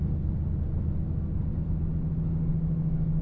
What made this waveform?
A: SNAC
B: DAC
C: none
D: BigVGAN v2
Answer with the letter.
C